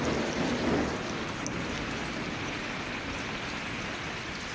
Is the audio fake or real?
real